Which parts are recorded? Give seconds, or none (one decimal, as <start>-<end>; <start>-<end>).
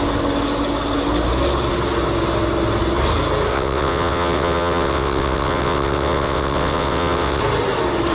0.0-3.5; 7.4-8.1